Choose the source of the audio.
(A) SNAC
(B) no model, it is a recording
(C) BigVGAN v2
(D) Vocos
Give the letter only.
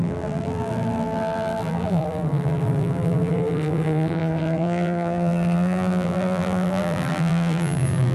C